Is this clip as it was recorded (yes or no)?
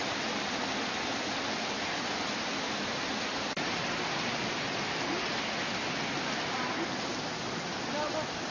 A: yes